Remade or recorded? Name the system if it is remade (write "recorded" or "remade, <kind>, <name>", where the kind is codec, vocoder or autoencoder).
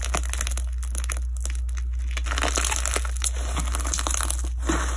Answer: recorded